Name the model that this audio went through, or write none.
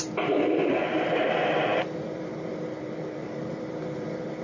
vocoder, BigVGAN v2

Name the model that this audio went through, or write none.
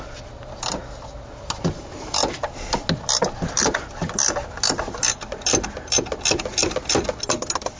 none